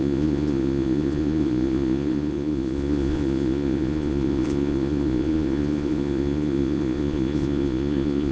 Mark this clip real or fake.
fake